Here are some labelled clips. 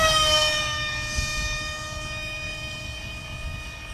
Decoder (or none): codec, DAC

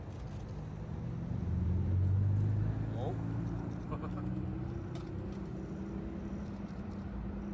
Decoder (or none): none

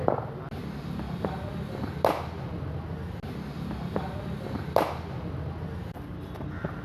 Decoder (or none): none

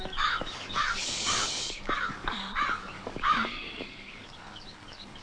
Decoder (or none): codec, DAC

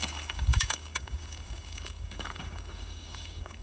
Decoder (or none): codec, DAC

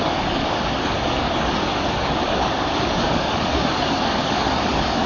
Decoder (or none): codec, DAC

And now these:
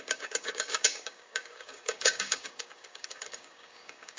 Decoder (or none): codec, DAC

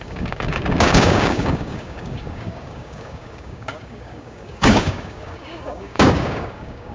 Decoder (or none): codec, DAC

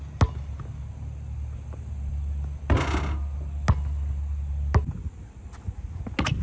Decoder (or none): none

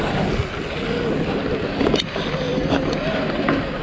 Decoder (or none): none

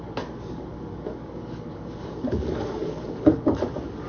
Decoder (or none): codec, DAC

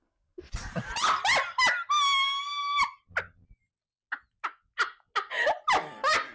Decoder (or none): none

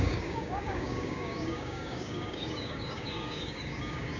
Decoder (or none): codec, DAC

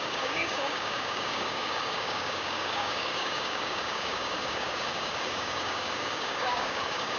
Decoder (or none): codec, DAC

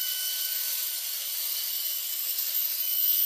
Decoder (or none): codec, DAC